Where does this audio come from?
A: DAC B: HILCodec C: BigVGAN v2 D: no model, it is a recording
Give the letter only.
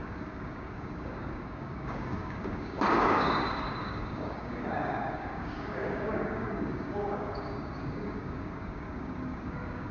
A